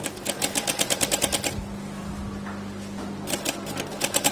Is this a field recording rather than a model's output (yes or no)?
yes